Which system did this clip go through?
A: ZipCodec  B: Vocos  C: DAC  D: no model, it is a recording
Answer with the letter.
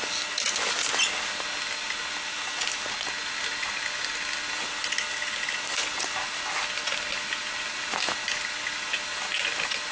D